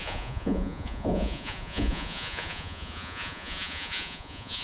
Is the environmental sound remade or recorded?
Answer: remade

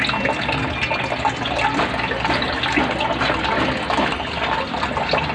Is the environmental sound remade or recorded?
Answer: recorded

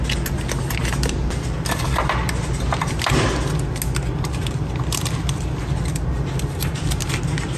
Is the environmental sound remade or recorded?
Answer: recorded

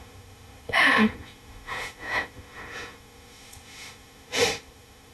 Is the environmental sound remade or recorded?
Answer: remade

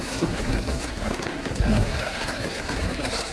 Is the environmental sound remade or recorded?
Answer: remade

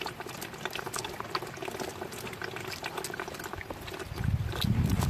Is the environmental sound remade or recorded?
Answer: recorded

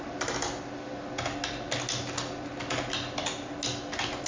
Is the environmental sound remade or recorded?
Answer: recorded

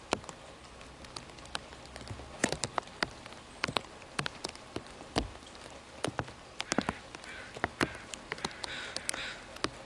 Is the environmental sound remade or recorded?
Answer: recorded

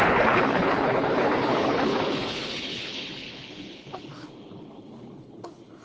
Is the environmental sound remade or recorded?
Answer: remade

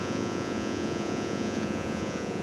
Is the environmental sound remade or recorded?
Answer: remade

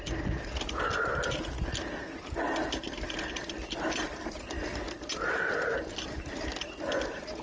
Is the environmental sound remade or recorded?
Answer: recorded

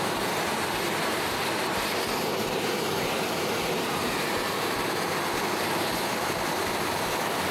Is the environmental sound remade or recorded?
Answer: remade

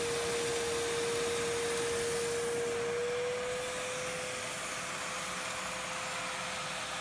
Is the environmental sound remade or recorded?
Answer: recorded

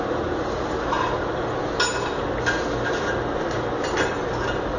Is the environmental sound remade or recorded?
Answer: recorded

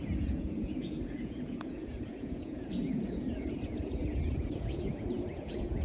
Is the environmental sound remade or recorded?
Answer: remade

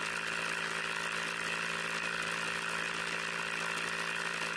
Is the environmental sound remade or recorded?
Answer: recorded